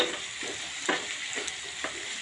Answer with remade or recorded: recorded